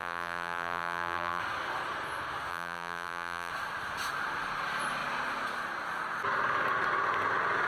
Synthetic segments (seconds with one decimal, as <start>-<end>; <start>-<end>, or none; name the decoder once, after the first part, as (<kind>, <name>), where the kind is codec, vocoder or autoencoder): 0.0-1.4 (vocoder, BigVGAN v2); 2.5-3.5